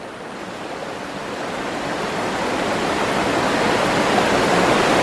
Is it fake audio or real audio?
real